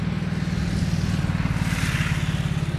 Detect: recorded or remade recorded